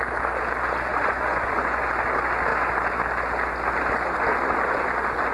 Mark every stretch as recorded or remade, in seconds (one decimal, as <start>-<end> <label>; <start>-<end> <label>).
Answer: 0.0-0.9 recorded; 0.9-1.9 remade; 1.9-5.3 recorded